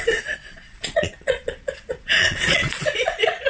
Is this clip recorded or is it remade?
remade